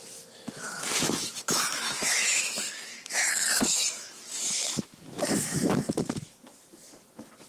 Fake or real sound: fake